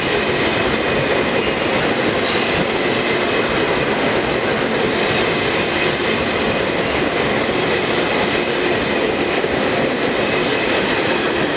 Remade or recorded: recorded